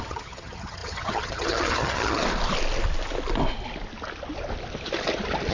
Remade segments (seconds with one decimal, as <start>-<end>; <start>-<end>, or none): 0.0-2.2